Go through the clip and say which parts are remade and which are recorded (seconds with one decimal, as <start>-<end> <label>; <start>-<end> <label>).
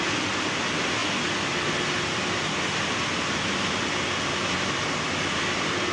0.0-5.9 recorded